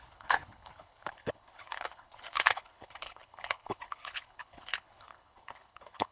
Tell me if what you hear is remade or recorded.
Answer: remade